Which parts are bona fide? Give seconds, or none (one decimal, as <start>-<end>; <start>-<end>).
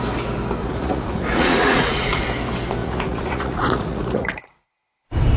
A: 0.0-0.6; 2.2-2.8; 4.8-5.4